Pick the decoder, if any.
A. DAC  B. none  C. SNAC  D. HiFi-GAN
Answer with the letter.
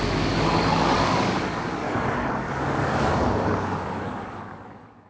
A